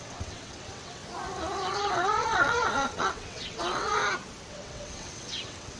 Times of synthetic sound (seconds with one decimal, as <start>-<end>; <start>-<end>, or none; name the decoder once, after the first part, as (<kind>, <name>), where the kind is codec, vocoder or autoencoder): 0.0-1.0 (vocoder, WaveNeXt); 1.7-4.0; 4.5-5.8